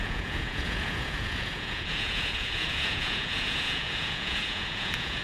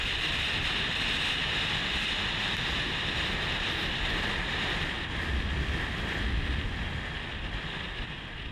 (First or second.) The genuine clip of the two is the second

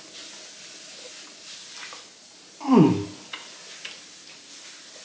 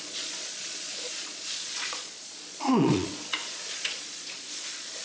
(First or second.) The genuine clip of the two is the first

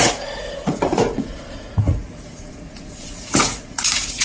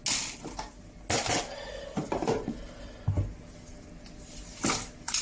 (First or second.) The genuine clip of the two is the second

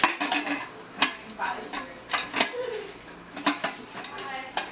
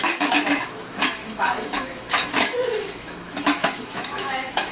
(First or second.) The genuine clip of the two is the first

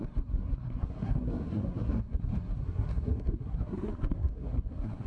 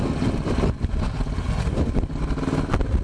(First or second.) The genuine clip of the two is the second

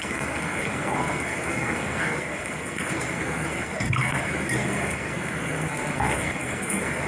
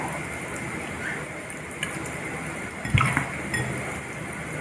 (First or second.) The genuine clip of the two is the second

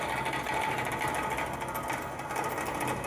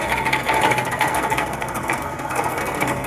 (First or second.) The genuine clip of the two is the first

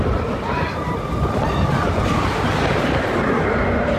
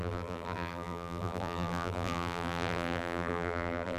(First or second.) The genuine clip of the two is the first